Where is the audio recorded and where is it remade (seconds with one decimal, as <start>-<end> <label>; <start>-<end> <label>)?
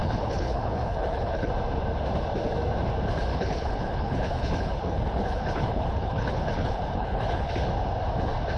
0.0-1.5 remade; 1.5-3.3 recorded; 3.3-7.5 remade; 7.5-8.6 recorded